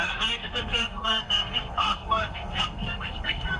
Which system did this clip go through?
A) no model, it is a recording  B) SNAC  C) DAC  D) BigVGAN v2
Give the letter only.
B